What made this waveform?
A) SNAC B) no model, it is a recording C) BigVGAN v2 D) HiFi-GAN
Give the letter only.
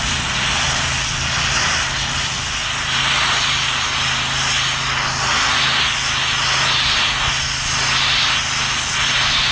B